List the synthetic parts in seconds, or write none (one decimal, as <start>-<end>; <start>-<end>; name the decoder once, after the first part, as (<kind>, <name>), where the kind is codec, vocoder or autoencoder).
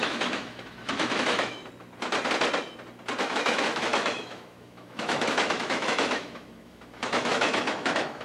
0.0-1.6 (autoencoder, DAC-VAE); 3.2-8.2